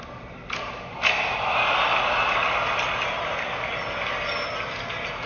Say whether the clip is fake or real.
real